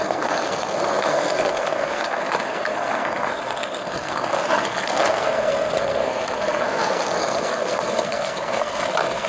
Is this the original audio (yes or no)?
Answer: no